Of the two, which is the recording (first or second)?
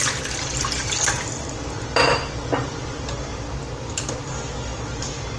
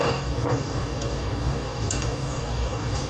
first